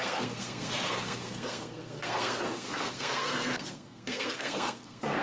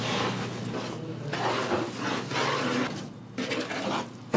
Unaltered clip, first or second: second